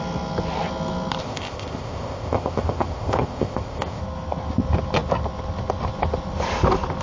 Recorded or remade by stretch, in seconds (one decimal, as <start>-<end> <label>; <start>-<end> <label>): 0.0-1.2 recorded; 1.2-4.0 remade; 4.0-7.0 recorded